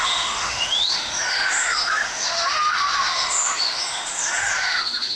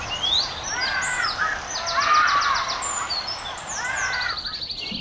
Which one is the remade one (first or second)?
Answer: first